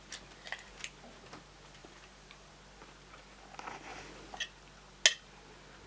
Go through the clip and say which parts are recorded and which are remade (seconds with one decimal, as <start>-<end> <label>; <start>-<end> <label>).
0.0-1.8 recorded; 1.8-2.5 remade; 2.5-5.9 recorded